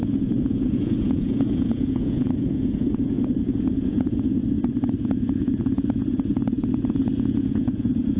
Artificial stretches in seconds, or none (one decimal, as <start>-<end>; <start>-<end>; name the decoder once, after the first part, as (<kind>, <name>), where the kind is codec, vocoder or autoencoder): 0.0-4.4 (vocoder, Vocos); 5.0-8.2